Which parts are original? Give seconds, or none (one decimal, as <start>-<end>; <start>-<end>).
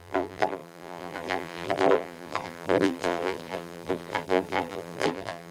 none